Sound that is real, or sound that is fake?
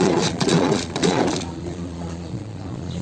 fake